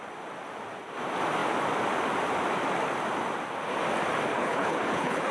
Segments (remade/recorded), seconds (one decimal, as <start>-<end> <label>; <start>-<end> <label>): 0.0-4.3 recorded; 4.3-5.3 remade